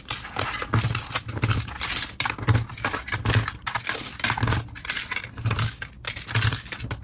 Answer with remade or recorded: recorded